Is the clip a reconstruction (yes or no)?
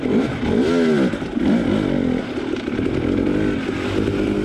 no